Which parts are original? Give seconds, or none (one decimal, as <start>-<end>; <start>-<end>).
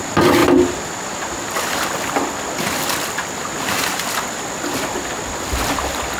0.0-6.2